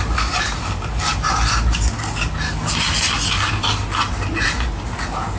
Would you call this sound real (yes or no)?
yes